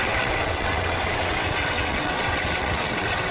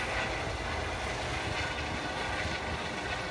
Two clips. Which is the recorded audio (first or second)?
second